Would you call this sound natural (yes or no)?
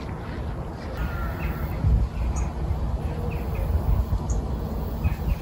yes